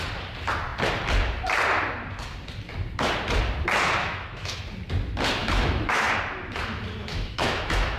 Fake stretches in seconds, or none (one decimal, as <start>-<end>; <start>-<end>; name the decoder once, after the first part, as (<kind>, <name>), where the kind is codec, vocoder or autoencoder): 4.0-4.6 (autoencoder, DAC-VAE); 5.4-6.1; 7.0-8.0